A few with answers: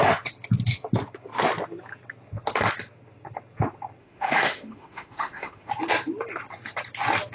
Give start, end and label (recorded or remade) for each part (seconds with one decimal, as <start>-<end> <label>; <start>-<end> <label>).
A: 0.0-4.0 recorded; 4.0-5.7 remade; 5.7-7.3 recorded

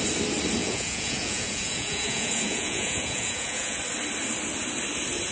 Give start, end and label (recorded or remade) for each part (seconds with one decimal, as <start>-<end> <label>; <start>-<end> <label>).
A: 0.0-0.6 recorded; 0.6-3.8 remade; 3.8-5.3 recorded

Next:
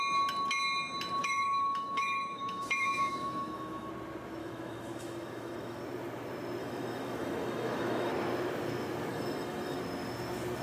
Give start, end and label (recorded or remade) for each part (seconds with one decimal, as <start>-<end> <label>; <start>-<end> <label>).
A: 0.0-1.2 recorded; 1.2-3.9 remade; 3.9-4.4 recorded; 4.4-5.8 remade; 5.8-6.6 recorded; 6.6-8.1 remade; 8.1-9.1 recorded; 9.1-9.8 remade; 9.8-10.6 recorded

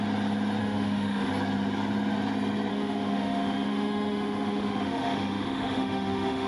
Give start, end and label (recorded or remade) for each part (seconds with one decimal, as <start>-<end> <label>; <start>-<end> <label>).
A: 0.0-0.6 recorded; 0.6-1.3 remade; 1.3-2.7 recorded; 2.7-6.5 remade

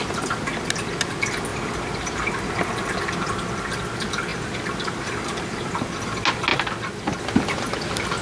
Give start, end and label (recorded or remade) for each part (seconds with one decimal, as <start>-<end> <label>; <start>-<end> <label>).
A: 0.0-1.5 recorded; 1.5-2.5 remade; 2.5-4.3 recorded; 4.3-5.7 remade; 5.7-8.2 recorded

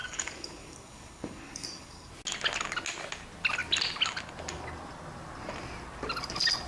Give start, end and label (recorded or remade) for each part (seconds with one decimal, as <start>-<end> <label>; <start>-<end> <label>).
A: 0.0-2.1 remade; 2.1-6.7 recorded

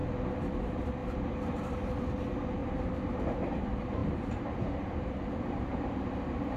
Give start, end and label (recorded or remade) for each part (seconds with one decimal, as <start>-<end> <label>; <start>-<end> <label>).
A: 0.0-1.0 recorded; 1.0-1.9 remade; 1.9-2.6 recorded; 2.6-3.4 remade; 3.4-4.0 recorded; 4.0-6.6 remade